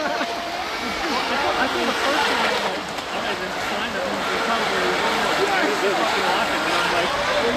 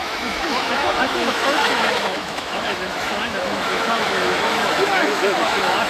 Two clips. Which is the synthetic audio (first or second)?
second